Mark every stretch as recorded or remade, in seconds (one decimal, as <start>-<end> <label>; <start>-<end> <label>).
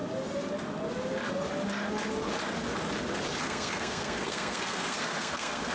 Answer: 0.0-3.4 recorded; 3.4-5.7 remade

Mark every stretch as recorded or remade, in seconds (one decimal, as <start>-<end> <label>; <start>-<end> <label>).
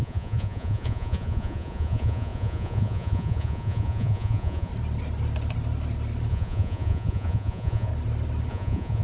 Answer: 0.0-4.7 remade; 4.7-6.3 recorded; 6.3-7.9 remade; 7.9-8.5 recorded; 8.5-9.0 remade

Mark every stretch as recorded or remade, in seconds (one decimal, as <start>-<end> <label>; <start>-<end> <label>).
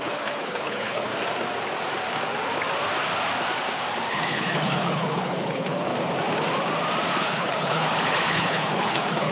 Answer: 0.0-1.1 remade; 1.1-4.1 recorded; 4.1-5.9 remade; 5.9-7.2 recorded; 7.2-9.3 remade